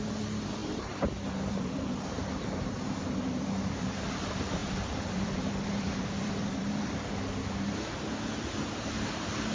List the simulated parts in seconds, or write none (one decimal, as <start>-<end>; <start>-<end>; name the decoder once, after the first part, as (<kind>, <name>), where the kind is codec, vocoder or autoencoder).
0.6-4.0 (vocoder, BigVGAN v2); 4.6-7.0